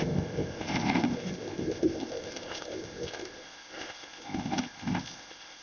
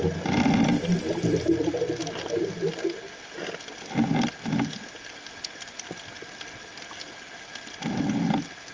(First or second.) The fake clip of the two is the first